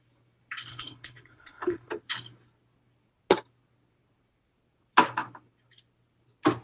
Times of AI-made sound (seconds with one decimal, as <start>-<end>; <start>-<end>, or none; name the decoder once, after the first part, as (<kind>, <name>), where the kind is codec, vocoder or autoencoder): 0.7-1.9 (codec, HILCodec)